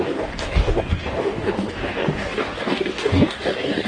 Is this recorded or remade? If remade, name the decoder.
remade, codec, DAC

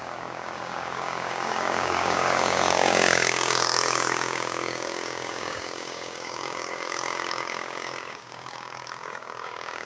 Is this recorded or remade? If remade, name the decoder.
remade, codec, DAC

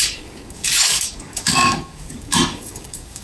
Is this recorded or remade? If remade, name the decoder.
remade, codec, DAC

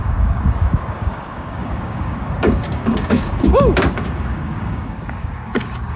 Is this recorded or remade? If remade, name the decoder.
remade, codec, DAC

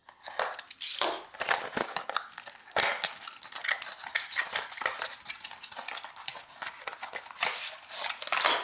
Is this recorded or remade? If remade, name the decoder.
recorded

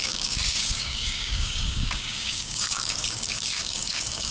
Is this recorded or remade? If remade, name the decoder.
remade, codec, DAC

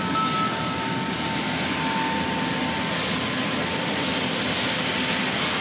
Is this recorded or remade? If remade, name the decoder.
recorded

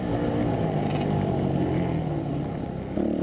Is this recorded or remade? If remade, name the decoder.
recorded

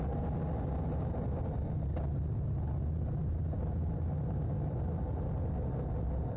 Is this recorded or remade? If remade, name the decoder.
recorded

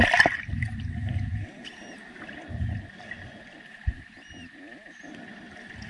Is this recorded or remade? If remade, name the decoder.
recorded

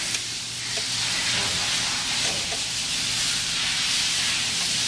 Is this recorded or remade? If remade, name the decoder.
recorded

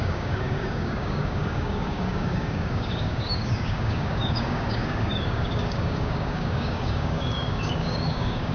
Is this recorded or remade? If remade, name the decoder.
remade, codec, DAC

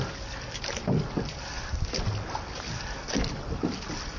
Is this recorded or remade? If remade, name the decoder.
recorded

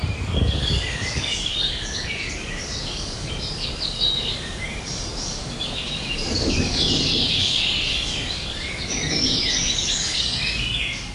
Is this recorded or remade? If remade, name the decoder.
remade, codec, DAC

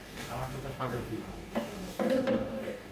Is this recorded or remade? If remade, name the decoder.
remade, codec, DAC